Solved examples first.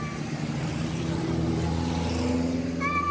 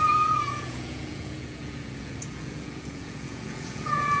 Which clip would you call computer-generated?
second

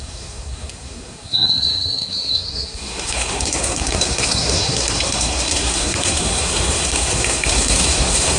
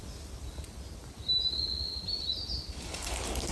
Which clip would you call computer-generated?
first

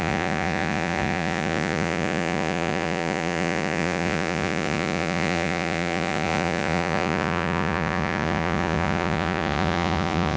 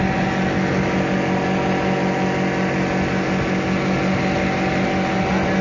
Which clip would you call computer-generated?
first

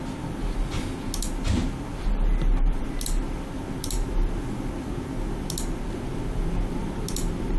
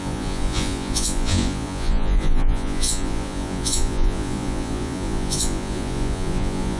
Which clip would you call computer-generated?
second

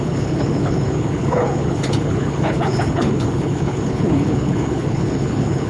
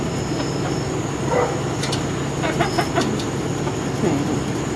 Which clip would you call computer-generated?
first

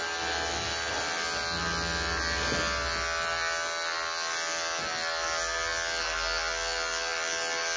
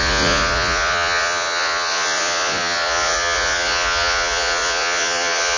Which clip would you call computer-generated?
second